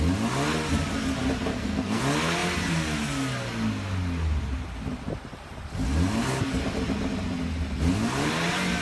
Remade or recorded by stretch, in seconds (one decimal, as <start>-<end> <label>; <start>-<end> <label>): 0.0-1.5 recorded; 1.5-2.0 remade; 2.0-8.8 recorded